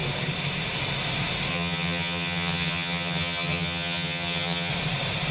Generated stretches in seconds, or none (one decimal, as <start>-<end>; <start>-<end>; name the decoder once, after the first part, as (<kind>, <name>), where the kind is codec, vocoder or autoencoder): 1.5-4.7 (vocoder, HiFi-GAN)